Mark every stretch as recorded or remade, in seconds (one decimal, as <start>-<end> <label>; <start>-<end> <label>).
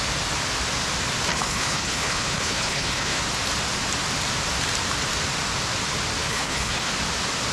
0.0-1.3 recorded; 1.3-3.2 remade; 3.2-6.2 recorded; 6.2-6.9 remade; 6.9-7.5 recorded